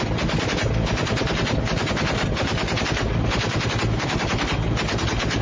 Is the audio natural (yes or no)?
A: yes